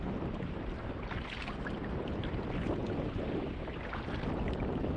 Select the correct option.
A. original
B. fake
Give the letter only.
A